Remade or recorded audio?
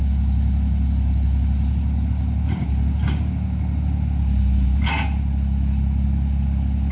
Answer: recorded